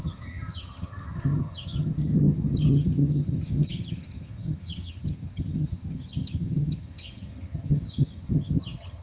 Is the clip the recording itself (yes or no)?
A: no